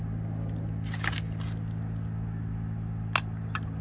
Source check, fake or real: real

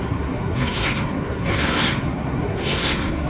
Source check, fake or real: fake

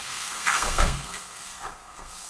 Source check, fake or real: fake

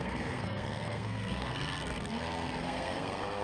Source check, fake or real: fake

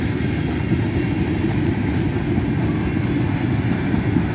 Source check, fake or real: real